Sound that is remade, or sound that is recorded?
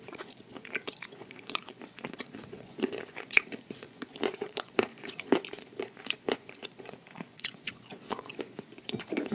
remade